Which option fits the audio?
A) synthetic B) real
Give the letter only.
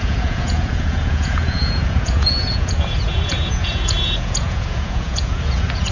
A